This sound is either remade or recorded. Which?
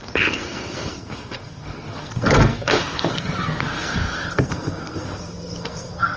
remade